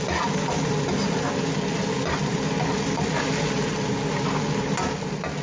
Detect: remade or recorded recorded